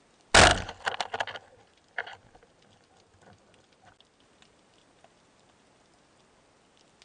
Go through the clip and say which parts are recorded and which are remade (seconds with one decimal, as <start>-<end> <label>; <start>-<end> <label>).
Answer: 0.0-7.0 recorded